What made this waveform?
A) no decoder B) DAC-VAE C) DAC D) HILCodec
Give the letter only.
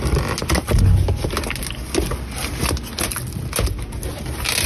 A